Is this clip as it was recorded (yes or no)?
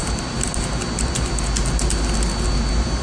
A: yes